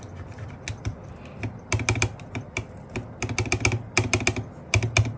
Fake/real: real